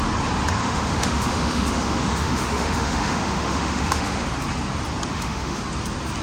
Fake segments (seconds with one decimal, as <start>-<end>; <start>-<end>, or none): 0.6-4.3; 5.1-5.6